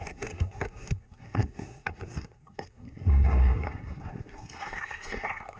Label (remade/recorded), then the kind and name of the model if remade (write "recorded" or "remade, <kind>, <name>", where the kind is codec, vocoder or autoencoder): remade, codec, SNAC